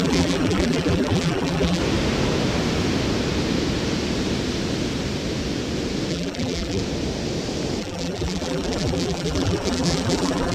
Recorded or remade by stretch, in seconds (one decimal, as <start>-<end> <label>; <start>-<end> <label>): 0.0-1.8 remade; 1.8-6.1 recorded; 6.1-6.8 remade; 6.8-7.8 recorded; 7.8-10.5 remade